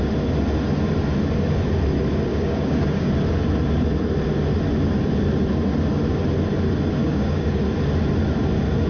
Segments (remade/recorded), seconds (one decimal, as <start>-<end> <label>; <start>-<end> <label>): 0.0-2.3 recorded; 2.3-3.1 remade; 3.1-7.0 recorded; 7.0-7.6 remade; 7.6-8.9 recorded